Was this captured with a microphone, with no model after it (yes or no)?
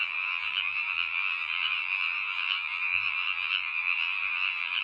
no